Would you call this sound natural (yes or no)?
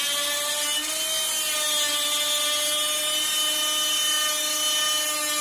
yes